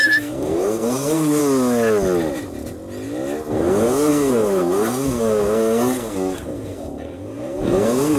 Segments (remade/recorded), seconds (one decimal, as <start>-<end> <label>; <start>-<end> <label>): 0.0-1.4 remade; 1.4-3.5 recorded; 3.5-8.2 remade